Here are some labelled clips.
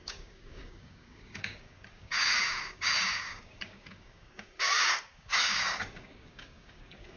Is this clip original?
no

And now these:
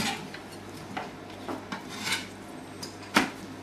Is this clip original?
yes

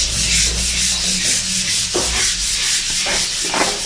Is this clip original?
yes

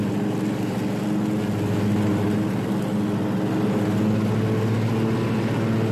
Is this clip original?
yes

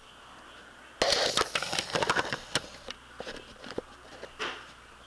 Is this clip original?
yes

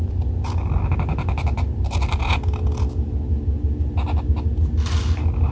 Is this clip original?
yes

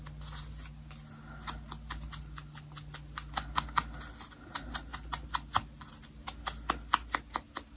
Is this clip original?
yes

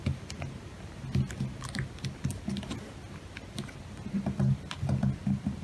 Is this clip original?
yes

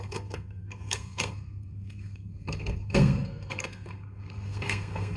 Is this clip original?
no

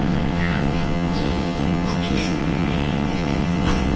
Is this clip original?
no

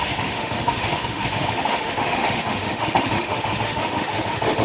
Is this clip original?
no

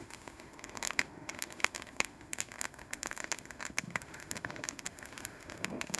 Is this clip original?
no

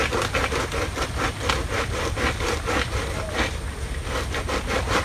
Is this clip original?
yes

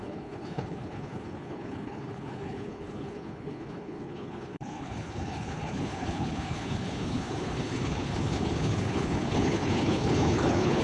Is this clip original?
no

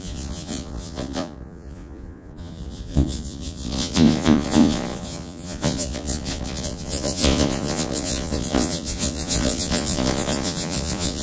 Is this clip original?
no